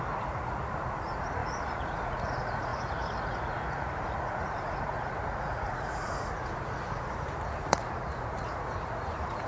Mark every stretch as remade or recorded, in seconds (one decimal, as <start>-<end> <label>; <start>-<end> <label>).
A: 0.0-9.5 remade